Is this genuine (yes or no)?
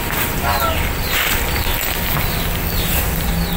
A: yes